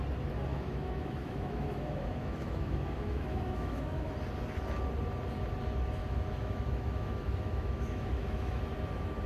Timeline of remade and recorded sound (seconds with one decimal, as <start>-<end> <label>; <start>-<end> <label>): 0.0-0.5 recorded; 0.5-4.1 remade; 4.1-6.0 recorded; 6.0-8.6 remade; 8.6-9.3 recorded